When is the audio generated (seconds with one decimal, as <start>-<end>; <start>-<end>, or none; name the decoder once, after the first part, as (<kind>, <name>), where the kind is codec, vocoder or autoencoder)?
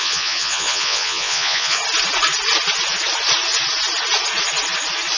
0.0-1.8 (vocoder, Vocos)